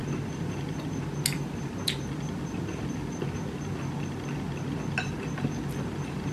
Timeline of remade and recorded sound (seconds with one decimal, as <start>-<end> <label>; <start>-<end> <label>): 0.0-6.3 recorded